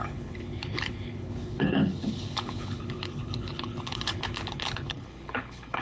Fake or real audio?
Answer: fake